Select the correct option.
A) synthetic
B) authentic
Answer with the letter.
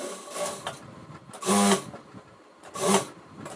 B